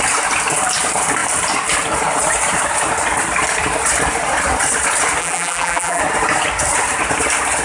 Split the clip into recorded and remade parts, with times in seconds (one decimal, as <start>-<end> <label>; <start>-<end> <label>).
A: 0.0-5.2 recorded; 5.2-6.0 remade; 6.0-7.6 recorded